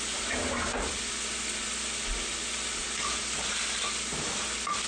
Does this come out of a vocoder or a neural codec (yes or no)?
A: no